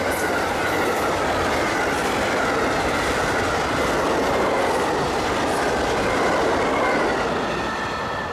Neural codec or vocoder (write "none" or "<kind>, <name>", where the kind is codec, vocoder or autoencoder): none